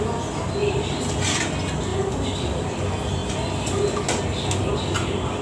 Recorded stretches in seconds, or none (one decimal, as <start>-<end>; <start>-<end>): 0.0-0.6; 1.4-1.9; 2.7-5.4

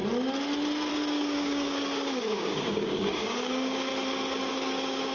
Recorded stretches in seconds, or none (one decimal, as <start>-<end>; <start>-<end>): 0.0-0.9; 3.9-4.5

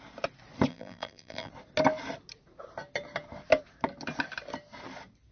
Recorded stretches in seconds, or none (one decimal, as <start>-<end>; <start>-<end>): 0.0-0.7; 1.5-5.3

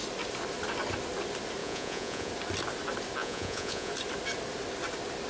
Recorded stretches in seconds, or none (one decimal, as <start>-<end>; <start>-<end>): 0.0-1.6; 2.3-3.2; 3.9-5.3

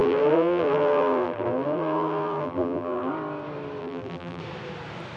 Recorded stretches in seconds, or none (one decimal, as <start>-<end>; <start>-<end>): 3.1-3.8; 4.4-5.2

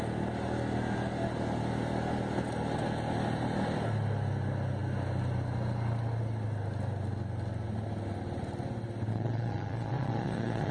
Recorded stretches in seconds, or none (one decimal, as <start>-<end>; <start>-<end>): 0.0-9.1